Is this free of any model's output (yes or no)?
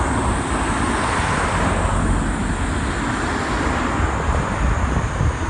yes